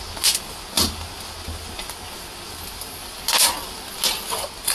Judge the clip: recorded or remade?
recorded